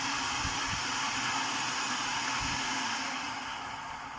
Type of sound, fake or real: real